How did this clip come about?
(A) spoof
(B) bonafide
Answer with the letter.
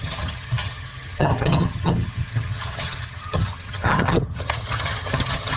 A